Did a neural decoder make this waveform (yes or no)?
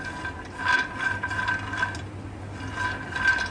no